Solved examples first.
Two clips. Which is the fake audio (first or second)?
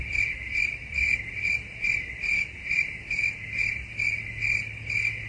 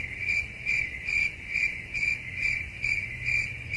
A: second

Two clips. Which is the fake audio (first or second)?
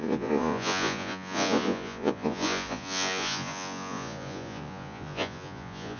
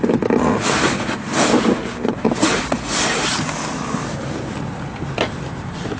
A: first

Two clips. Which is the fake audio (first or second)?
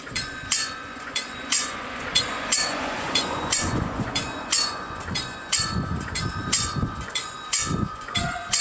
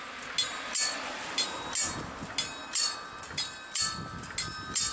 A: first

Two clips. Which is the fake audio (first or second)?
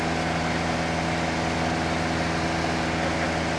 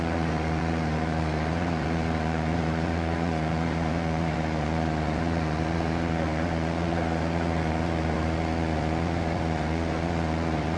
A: second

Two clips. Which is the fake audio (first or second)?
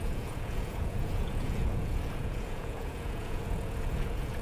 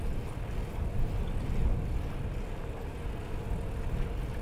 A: first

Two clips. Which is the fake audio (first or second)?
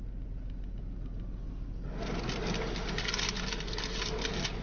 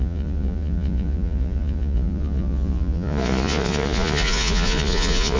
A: second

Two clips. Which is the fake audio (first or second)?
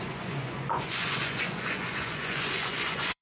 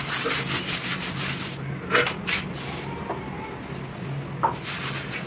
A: first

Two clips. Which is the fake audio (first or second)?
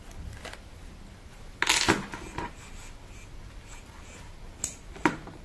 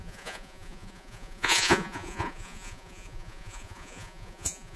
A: second